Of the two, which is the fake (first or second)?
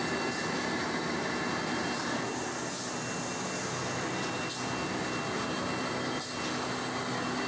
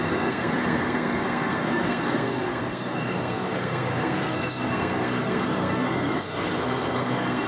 second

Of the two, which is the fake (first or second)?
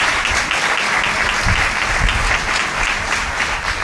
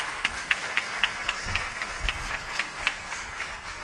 second